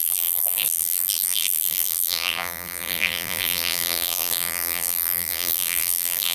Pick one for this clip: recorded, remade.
remade